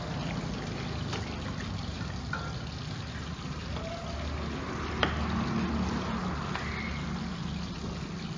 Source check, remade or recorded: recorded